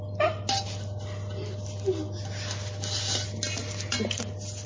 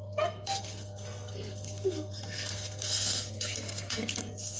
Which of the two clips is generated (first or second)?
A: second